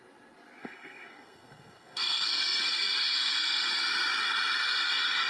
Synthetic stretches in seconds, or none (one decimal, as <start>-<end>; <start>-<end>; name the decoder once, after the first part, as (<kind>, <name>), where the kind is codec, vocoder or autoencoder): 0.6-3.8 (codec, SNAC)